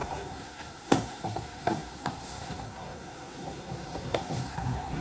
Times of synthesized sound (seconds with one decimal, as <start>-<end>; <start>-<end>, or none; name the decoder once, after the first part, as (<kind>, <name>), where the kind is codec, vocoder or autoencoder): 0.0-5.0 (codec, SNAC)